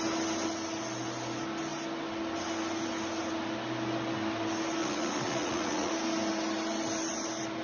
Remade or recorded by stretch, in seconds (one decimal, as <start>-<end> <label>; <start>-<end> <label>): 0.0-4.8 recorded; 4.8-5.9 remade; 5.9-7.6 recorded